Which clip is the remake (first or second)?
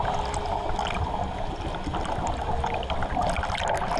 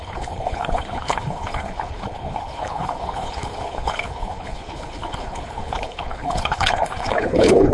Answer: second